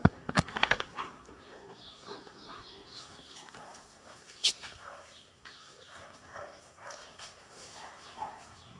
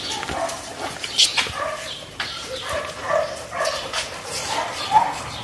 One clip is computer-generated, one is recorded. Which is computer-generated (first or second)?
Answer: first